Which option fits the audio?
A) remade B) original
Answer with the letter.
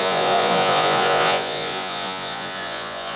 A